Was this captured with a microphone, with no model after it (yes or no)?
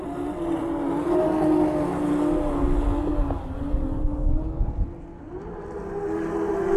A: yes